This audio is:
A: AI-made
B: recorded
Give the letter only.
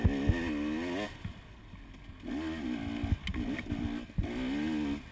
B